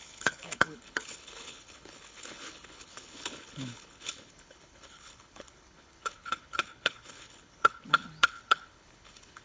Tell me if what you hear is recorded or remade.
remade